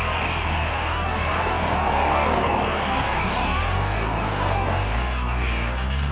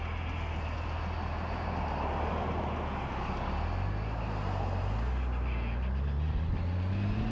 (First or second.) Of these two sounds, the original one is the second